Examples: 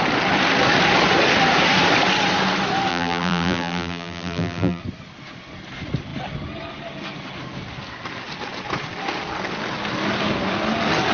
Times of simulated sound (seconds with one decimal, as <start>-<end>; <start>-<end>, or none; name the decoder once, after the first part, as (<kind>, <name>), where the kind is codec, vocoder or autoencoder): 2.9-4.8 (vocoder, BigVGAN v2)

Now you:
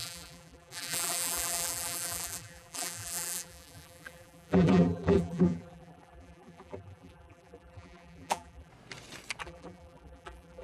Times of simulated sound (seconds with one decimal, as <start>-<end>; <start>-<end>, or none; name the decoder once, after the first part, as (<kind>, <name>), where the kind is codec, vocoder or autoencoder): 0.0-8.7 (vocoder, BigVGAN v2); 9.4-10.6

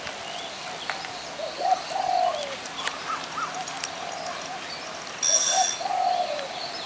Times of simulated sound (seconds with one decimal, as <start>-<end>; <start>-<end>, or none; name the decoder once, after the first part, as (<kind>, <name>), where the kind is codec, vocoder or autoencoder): 5.9-6.5 (vocoder, BigVGAN v2)

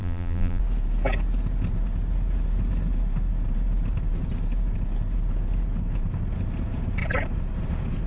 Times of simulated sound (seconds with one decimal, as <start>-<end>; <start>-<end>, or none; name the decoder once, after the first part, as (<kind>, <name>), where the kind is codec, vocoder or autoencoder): 0.0-0.6 (vocoder, BigVGAN v2)